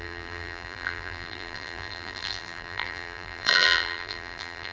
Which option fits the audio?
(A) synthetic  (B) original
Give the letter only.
A